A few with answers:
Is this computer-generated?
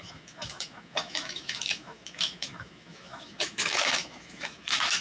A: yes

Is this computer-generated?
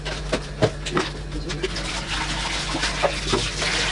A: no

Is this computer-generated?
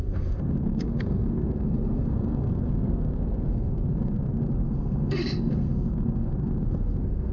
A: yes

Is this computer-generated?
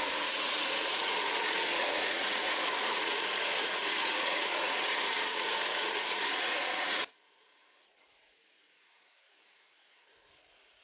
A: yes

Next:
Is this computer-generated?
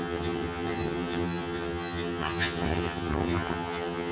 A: yes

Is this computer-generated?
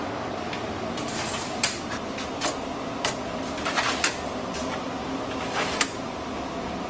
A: no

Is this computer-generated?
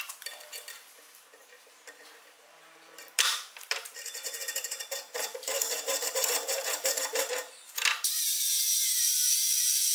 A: yes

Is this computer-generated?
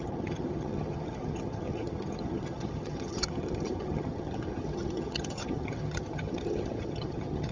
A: yes